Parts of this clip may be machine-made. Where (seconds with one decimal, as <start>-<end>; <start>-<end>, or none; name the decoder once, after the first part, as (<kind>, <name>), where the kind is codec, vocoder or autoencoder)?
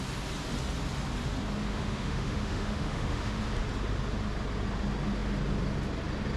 1.7-3.4 (autoencoder, DAC-VAE)